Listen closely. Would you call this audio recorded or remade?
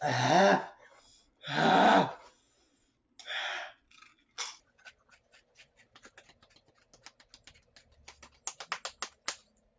recorded